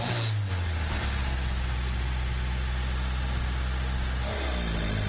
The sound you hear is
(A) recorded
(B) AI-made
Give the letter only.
A